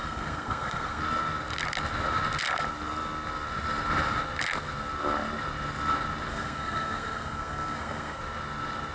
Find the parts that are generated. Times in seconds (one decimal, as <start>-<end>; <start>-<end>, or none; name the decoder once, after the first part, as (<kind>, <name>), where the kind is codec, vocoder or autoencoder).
0.0-1.0 (codec, SNAC); 6.3-8.2